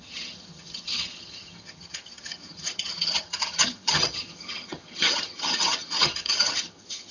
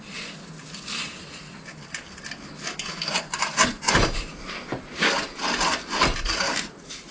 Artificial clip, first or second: first